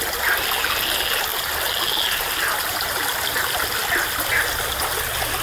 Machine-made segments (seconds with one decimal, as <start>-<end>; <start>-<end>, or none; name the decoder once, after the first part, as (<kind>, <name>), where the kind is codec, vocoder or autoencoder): none